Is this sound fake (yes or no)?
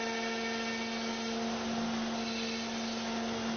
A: no